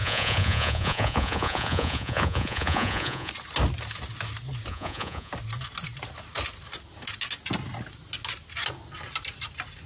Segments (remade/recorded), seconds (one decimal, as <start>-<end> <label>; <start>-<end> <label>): 0.0-3.3 remade; 3.3-4.7 recorded; 4.7-5.3 remade; 5.3-9.9 recorded